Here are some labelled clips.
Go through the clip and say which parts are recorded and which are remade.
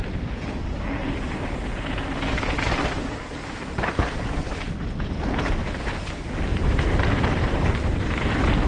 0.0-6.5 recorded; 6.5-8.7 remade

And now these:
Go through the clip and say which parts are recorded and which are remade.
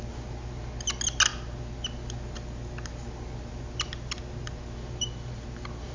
0.0-5.9 recorded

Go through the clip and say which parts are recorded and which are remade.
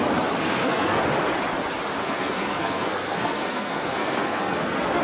0.0-0.4 recorded; 0.4-1.0 remade; 1.0-2.0 recorded; 2.0-5.0 remade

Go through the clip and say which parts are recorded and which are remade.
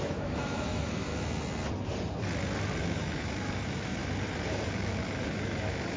0.0-1.1 remade; 1.1-2.8 recorded; 2.8-4.0 remade; 4.0-4.5 recorded; 4.5-6.0 remade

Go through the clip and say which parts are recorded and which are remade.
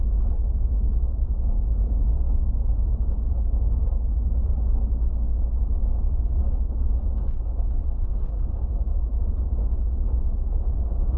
0.0-4.5 remade; 4.5-5.6 recorded; 5.6-11.2 remade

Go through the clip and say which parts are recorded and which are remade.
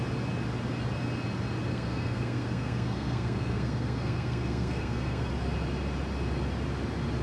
0.0-1.7 recorded; 1.7-5.3 remade; 5.3-7.2 recorded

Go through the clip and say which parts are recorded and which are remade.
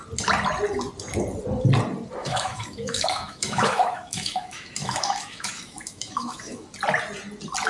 0.0-2.2 recorded; 2.2-6.7 remade; 6.7-7.7 recorded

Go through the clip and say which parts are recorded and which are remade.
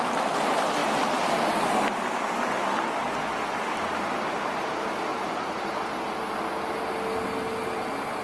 0.0-5.1 recorded; 5.1-5.6 remade; 5.6-8.2 recorded